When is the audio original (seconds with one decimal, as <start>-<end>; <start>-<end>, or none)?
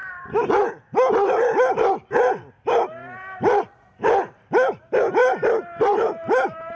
0.7-5.2